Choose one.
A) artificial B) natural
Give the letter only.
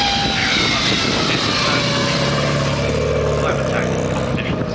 B